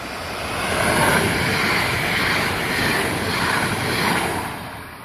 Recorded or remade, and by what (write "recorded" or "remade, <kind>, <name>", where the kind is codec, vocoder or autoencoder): recorded